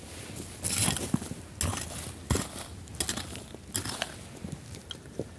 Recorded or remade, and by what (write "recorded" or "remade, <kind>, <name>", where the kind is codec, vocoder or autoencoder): recorded